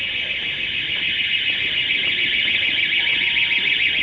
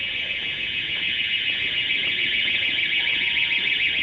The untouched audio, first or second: first